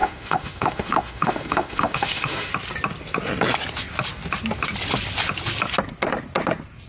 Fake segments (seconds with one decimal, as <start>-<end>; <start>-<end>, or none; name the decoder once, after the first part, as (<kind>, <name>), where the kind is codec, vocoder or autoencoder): 0.0-2.5 (autoencoder, DAC-VAE)

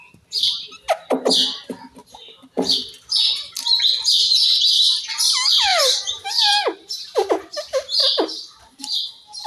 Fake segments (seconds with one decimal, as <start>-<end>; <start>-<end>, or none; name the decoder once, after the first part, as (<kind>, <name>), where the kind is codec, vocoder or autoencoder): 2.0-2.9 (vocoder, BigVGAN v2); 5.7-7.3; 8.0-8.8

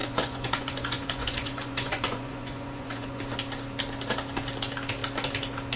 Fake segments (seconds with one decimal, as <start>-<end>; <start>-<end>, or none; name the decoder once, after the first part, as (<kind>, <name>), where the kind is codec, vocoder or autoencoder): 0.0-3.2 (vocoder, Vocos)

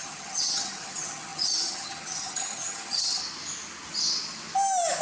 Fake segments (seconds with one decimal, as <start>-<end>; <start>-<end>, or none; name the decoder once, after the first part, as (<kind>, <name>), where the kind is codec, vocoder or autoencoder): 0.0-3.2 (vocoder, HiFi-GAN)